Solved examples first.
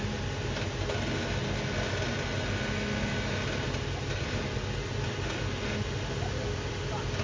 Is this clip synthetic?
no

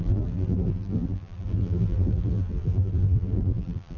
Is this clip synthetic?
yes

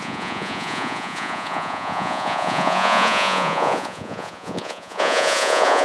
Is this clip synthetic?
yes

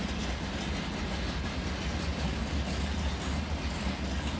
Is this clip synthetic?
no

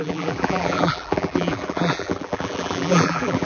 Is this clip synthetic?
yes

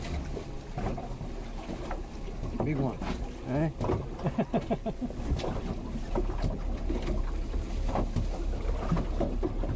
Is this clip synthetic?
no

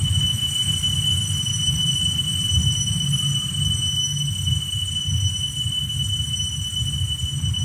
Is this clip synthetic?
no